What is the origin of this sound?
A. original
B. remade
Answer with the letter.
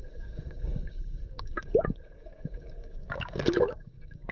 B